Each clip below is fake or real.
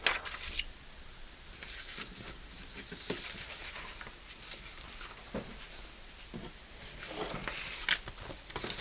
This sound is real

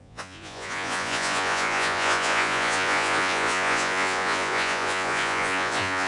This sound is fake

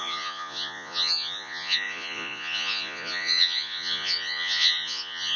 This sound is fake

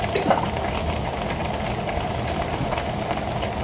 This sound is real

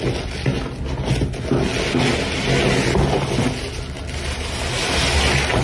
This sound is real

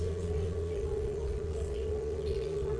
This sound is fake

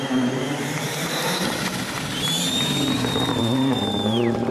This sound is fake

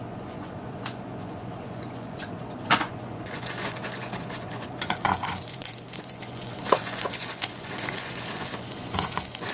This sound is fake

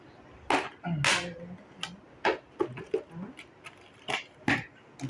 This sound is real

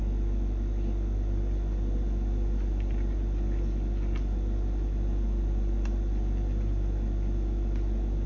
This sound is real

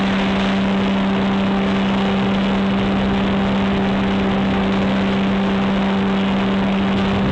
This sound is real